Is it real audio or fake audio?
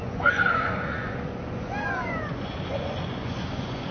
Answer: fake